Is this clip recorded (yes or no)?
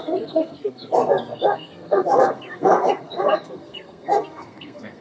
no